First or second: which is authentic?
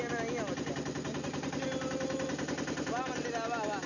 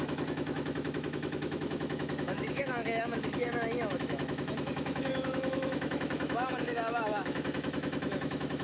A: first